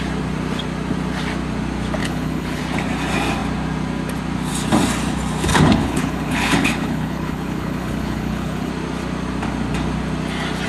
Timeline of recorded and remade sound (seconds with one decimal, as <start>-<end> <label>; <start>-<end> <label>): 0.0-2.0 recorded; 2.0-2.6 remade; 2.6-5.5 recorded; 5.5-8.7 remade; 8.7-10.7 recorded